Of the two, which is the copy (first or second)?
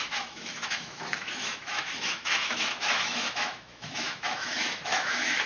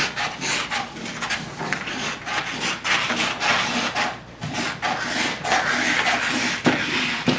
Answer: first